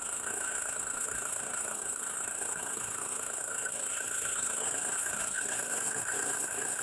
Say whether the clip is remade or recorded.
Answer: remade